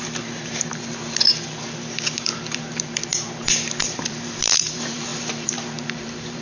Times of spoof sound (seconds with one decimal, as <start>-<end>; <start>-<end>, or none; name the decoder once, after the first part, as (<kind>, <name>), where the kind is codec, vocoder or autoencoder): 0.0-6.4 (vocoder, BigVGAN v2)